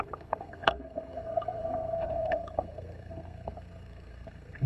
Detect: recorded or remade remade